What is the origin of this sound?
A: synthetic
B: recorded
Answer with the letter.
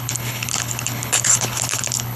A